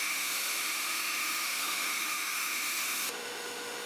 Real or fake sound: fake